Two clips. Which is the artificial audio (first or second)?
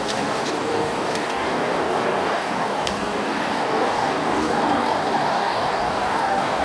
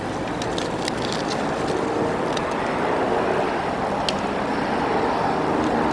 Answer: first